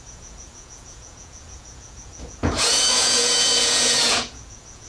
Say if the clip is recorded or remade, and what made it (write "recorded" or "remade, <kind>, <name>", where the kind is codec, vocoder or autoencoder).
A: remade, vocoder, Vocos